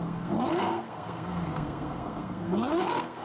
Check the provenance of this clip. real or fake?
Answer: fake